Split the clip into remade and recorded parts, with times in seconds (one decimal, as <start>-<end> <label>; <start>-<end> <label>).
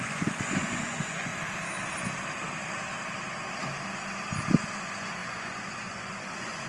0.0-1.3 remade; 1.3-4.8 recorded; 4.8-6.7 remade